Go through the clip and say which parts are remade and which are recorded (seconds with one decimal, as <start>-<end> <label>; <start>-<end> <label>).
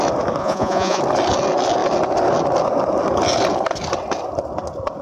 0.0-0.4 recorded; 0.4-1.0 remade; 1.0-5.0 recorded